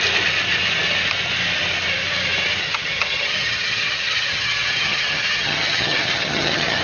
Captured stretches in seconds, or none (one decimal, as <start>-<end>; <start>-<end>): 0.0-2.6